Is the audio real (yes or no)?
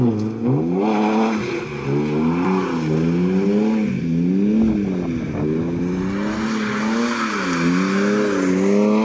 yes